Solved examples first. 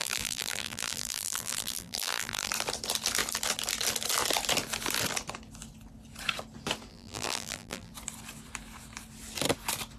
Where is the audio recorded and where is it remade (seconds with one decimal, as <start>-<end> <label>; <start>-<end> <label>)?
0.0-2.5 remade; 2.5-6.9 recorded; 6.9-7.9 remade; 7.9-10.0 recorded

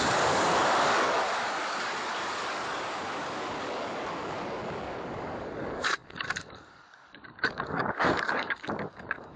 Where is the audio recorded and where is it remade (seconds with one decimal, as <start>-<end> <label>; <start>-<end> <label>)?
0.0-9.4 remade

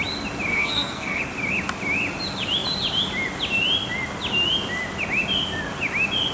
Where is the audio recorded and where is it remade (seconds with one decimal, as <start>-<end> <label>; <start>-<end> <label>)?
0.0-0.5 recorded; 0.5-1.2 remade; 1.2-6.3 recorded

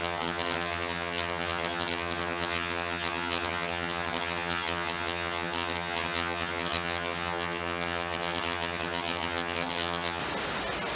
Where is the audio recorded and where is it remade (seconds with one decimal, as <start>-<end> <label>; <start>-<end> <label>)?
0.0-10.2 remade; 10.2-11.0 recorded